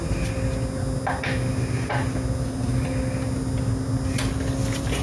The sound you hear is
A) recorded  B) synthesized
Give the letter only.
A